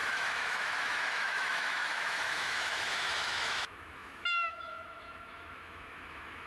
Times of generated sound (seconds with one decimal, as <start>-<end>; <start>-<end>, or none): 0.0-6.5